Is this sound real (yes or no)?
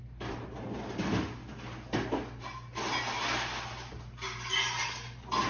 yes